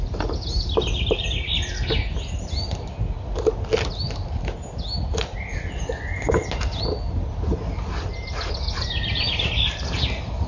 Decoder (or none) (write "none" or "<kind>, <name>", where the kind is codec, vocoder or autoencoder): none